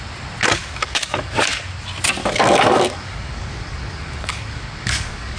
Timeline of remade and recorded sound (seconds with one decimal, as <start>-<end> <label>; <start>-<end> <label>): 0.0-0.6 recorded; 0.6-1.6 remade; 1.6-2.2 recorded; 2.2-5.4 remade